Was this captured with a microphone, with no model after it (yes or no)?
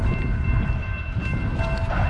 yes